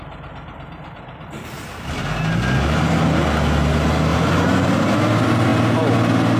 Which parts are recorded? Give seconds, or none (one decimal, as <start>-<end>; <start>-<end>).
0.0-4.1; 4.7-6.4